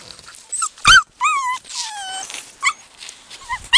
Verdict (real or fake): real